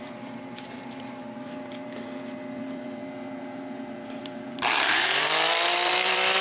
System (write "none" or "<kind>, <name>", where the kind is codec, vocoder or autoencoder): vocoder, BigVGAN v2